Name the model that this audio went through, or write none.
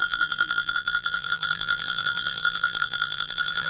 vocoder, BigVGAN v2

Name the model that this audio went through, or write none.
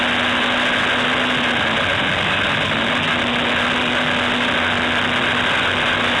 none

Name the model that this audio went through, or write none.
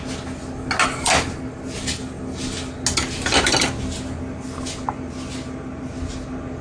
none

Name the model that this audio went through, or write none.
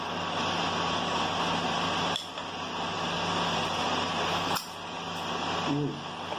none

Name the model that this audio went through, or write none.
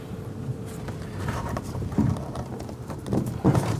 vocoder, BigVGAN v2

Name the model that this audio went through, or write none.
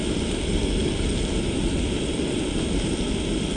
none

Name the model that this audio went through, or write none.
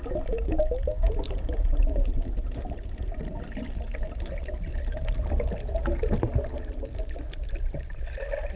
none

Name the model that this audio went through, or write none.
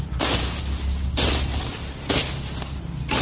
none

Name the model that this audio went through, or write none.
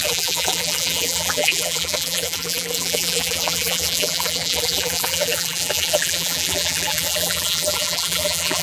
vocoder, BigVGAN v2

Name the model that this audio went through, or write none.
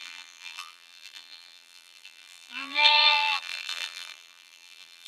vocoder, BigVGAN v2